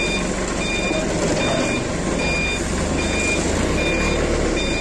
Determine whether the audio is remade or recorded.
recorded